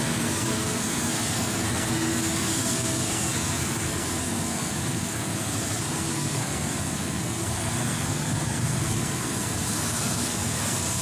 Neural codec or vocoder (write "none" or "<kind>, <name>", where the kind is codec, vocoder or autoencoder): codec, SNAC